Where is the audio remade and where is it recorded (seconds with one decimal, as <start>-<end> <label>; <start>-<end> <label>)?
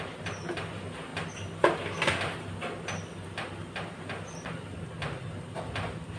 0.0-6.2 recorded